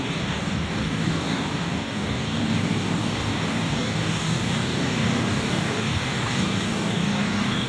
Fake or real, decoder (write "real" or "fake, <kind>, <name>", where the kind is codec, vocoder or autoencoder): fake, codec, DAC